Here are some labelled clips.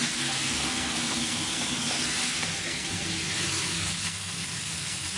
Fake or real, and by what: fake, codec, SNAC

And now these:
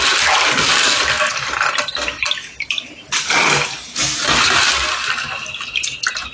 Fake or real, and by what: real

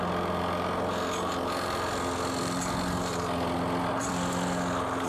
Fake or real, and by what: real